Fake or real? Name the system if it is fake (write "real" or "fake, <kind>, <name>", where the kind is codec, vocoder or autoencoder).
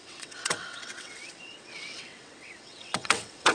fake, vocoder, WaveNeXt